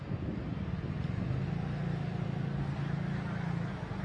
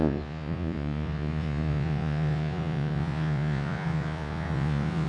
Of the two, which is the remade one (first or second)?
second